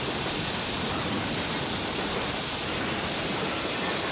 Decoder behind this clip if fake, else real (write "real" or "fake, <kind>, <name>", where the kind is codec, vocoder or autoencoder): real